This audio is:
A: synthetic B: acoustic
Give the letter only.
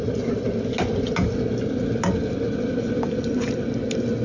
B